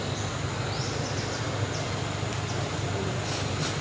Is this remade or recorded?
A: recorded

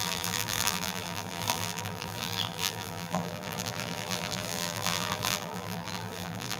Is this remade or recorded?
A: remade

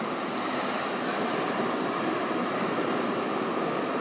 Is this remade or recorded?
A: remade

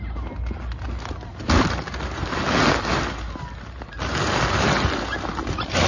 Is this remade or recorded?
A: recorded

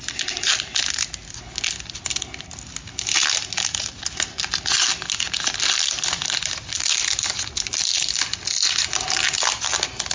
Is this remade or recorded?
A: recorded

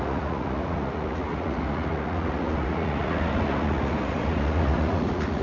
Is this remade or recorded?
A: remade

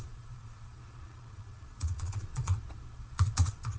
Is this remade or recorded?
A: remade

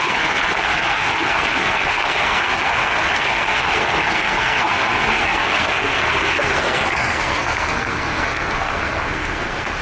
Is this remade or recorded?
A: remade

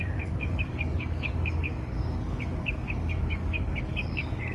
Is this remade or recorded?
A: remade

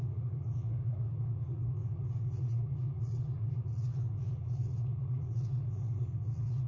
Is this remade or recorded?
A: remade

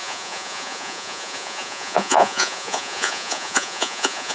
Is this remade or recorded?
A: remade